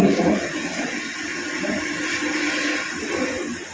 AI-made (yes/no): no